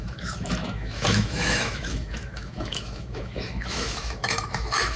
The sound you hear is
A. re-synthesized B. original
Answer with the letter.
A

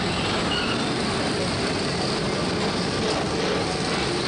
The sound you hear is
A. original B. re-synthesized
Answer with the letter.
A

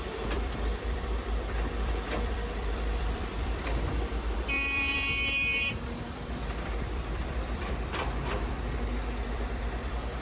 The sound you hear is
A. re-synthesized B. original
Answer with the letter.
A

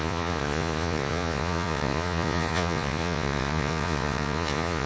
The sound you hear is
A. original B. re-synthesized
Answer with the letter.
B